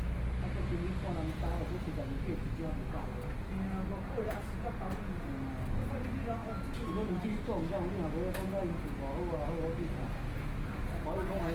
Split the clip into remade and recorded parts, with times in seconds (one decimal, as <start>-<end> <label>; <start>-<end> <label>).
0.0-11.5 recorded